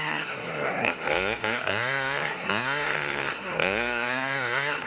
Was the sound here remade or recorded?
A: remade